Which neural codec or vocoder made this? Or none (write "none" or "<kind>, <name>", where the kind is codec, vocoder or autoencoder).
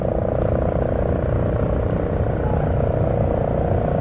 none